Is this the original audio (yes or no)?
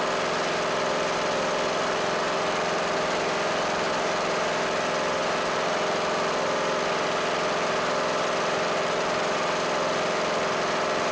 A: yes